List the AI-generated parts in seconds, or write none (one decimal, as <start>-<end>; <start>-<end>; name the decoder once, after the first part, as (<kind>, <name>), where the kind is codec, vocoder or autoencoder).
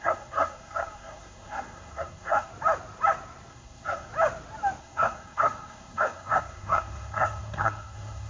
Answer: 0.0-2.5 (codec, SNAC); 3.5-4.1; 4.8-8.3